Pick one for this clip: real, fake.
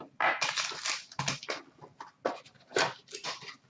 real